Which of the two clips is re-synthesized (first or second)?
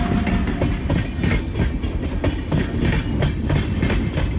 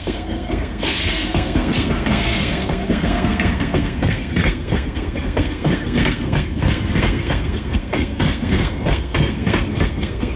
second